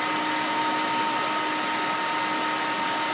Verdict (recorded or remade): recorded